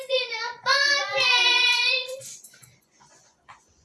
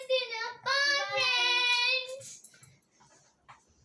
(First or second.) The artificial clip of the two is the first